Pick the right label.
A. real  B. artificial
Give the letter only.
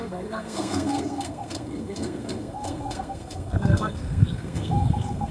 B